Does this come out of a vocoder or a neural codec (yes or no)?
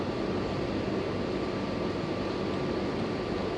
no